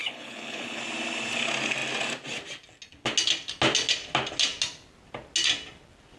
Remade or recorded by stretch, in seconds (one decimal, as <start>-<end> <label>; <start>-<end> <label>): 0.0-0.8 remade; 0.8-6.2 recorded